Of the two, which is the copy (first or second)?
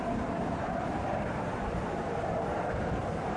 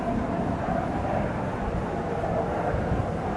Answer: first